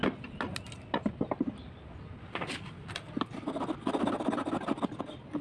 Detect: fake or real real